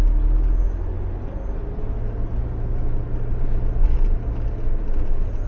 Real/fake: real